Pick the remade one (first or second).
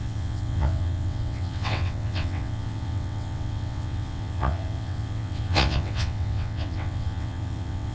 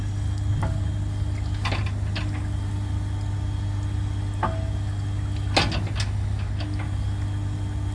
first